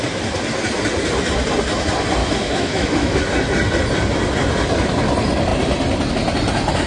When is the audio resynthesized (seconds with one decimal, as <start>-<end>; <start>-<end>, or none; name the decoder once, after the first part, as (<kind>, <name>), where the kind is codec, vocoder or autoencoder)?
2.2-3.2 (autoencoder, DAC-VAE)